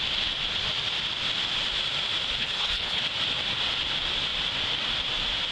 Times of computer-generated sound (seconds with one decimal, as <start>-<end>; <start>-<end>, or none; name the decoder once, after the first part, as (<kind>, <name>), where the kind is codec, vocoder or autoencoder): 2.4-3.0 (codec, HILCodec)